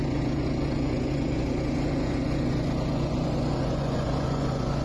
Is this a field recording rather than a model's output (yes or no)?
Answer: no